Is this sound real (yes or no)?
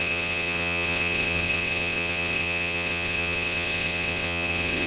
no